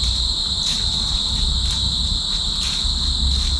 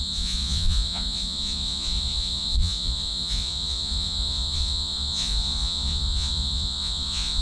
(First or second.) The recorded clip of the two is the first